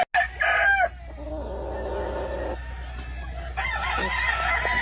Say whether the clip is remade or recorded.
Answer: recorded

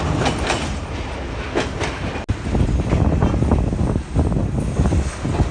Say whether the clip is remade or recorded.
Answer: recorded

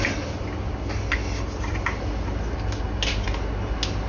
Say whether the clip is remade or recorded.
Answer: recorded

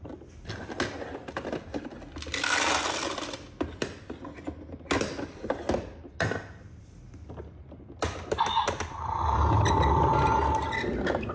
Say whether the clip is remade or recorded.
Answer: recorded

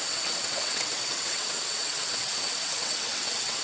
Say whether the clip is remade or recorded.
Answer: remade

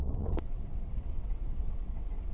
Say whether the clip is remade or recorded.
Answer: remade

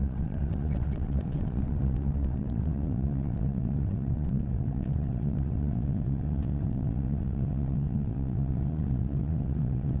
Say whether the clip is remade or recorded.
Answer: remade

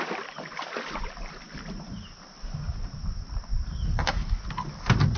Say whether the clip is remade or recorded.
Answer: recorded